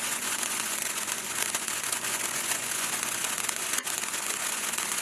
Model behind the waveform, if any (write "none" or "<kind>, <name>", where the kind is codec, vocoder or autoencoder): vocoder, Vocos